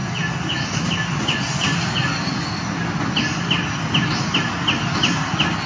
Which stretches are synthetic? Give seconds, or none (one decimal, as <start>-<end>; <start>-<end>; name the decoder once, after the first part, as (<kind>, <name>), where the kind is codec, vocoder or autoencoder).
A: none